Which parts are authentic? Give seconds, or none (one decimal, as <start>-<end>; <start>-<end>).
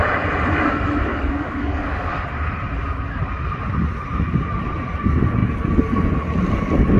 0.0-1.1; 2.1-7.0